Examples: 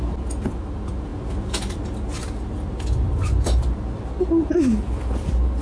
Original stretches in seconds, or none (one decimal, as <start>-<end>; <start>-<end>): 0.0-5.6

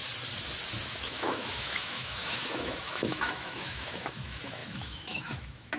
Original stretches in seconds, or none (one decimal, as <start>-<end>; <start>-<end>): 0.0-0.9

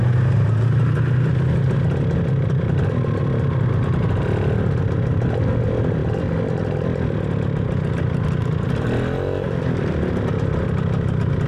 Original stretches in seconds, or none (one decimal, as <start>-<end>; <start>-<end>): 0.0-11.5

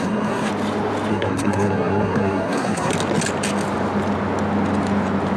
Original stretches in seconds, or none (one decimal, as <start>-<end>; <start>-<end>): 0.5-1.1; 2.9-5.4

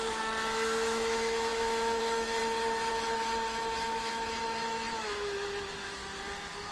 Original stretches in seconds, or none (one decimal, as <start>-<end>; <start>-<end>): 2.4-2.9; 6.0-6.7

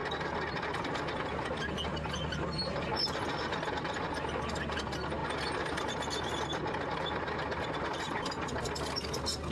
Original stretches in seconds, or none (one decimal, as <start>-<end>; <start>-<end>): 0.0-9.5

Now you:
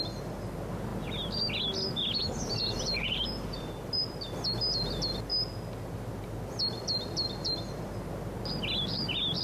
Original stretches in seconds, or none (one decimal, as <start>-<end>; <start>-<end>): 0.0-2.2; 4.0-9.4